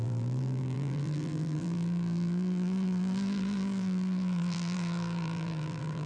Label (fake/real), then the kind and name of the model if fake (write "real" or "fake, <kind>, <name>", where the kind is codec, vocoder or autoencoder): fake, vocoder, BigVGAN v2